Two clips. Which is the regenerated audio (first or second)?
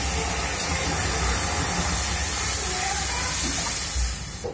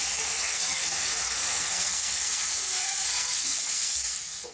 second